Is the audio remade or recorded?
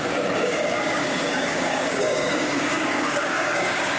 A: remade